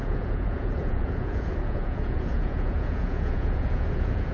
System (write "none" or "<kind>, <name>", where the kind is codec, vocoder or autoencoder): vocoder, Vocos